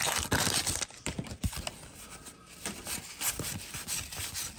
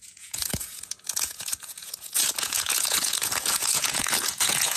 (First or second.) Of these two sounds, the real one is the first